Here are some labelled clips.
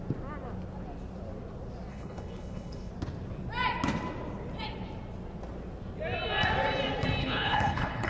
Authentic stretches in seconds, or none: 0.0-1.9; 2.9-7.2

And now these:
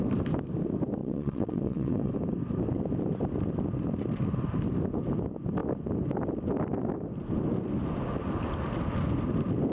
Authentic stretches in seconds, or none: 0.0-1.0; 2.1-9.7

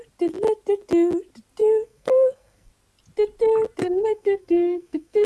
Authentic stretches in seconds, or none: 0.0-1.6; 2.7-3.8

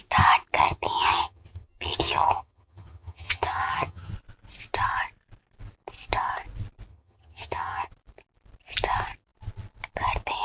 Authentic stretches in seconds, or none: 0.0-0.6; 4.1-6.9; 7.9-10.4

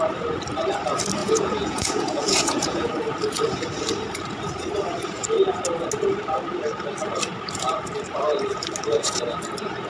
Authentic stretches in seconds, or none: 0.0-1.2; 2.9-9.9

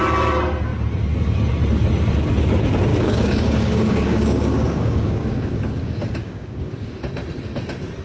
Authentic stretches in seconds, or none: 0.0-2.9; 7.0-8.0

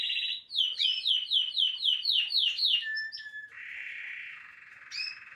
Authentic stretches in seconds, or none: 0.0-0.9; 4.0-5.3

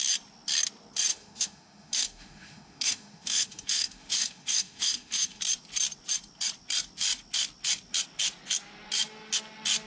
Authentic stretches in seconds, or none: 0.0-1.1; 5.4-9.9